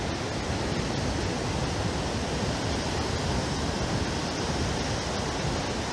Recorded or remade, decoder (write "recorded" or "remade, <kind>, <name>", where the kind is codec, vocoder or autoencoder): recorded